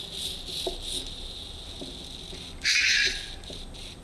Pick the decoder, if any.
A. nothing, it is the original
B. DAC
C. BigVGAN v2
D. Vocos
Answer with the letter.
A